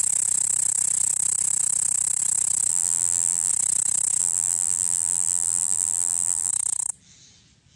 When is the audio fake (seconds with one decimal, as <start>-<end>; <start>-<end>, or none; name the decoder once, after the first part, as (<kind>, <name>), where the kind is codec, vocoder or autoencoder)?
2.7-3.5 (vocoder, BigVGAN v2); 4.2-6.5